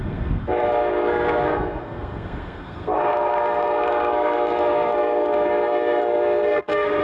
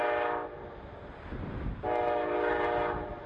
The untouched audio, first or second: second